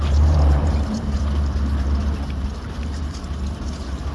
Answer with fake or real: fake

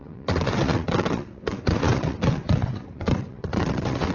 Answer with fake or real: fake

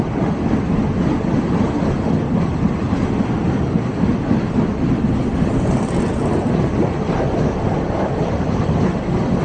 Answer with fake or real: fake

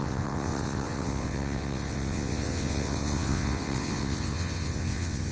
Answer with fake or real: fake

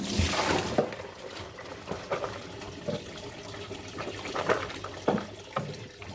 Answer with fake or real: real